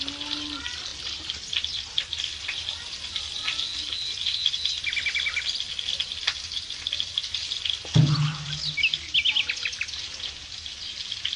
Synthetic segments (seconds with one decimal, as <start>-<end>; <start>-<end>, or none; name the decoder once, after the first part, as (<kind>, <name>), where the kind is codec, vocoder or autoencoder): none